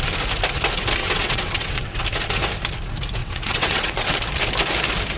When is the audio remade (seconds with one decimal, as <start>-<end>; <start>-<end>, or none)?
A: 1.0-2.0; 3.2-4.2